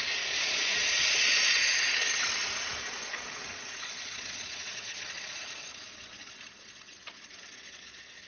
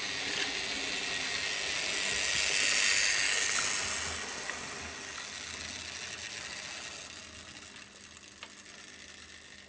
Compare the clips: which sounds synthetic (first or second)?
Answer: first